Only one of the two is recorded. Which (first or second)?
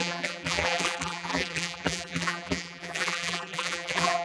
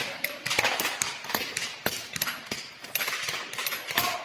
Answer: second